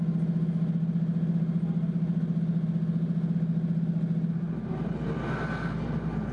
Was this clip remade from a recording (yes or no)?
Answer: no